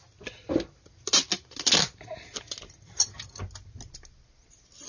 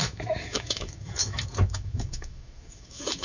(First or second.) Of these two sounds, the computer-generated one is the second